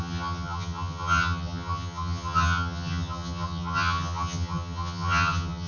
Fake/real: fake